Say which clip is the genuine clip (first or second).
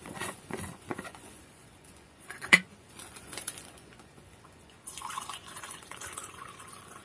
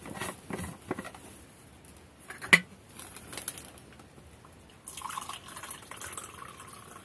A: second